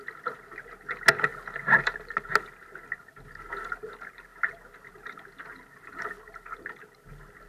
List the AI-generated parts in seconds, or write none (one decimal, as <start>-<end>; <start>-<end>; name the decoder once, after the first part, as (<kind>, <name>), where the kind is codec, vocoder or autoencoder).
none